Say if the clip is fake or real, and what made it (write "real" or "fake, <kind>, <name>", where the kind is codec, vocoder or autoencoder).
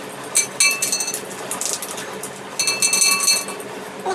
real